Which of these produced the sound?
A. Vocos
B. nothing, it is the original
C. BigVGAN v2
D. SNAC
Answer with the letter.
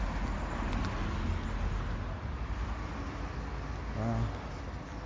B